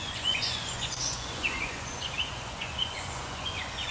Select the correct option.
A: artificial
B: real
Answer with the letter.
A